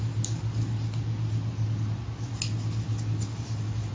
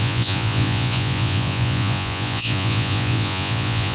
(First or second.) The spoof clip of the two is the second